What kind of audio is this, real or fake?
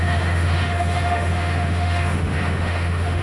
fake